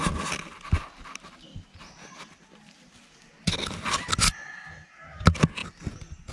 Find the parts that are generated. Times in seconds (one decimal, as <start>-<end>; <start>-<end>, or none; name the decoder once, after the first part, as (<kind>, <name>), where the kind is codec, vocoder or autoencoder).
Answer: none